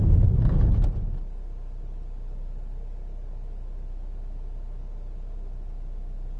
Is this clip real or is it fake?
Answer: real